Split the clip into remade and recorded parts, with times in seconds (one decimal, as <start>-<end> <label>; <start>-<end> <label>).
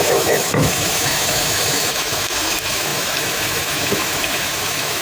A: 0.0-5.0 remade